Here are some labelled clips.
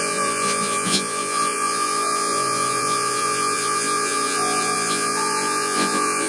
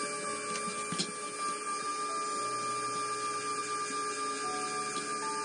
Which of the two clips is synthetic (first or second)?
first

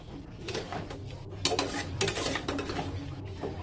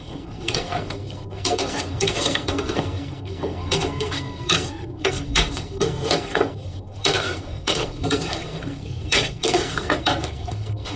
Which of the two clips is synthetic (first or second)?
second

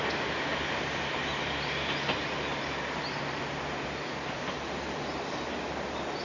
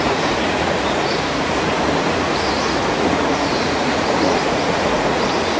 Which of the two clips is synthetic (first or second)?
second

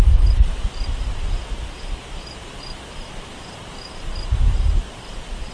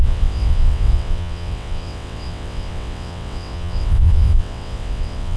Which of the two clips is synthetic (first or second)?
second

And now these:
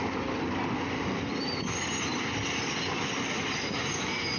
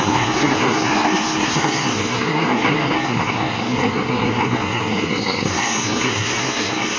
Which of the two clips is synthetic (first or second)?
second